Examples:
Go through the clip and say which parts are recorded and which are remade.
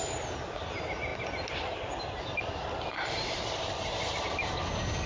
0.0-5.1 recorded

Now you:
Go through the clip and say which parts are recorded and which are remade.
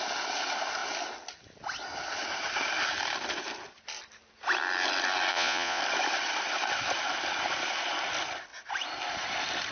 0.0-5.3 recorded; 5.3-5.8 remade; 5.8-9.7 recorded